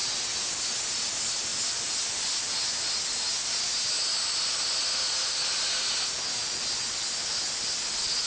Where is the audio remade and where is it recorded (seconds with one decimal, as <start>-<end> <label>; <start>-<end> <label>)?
0.0-8.3 recorded